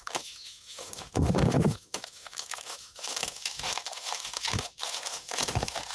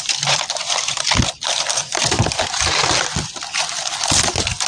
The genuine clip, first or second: second